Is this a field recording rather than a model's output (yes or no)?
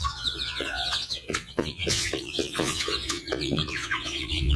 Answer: no